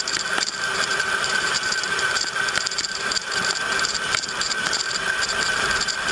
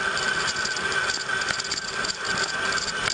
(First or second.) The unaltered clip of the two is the second